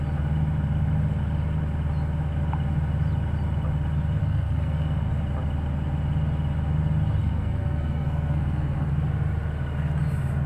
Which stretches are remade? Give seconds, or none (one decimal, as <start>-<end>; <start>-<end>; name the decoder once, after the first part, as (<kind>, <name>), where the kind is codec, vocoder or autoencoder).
4.2-5.1 (codec, SNAC); 7.2-8.9